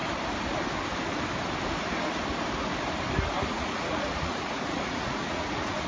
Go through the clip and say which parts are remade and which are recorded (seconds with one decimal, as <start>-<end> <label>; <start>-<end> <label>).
0.0-3.5 recorded; 3.5-5.9 remade